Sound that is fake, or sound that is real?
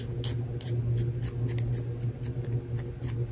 real